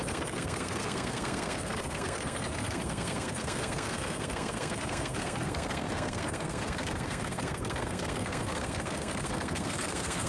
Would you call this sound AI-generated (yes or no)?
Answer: yes